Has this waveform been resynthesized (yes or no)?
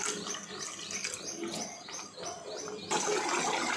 no